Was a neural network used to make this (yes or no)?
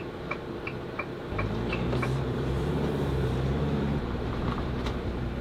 yes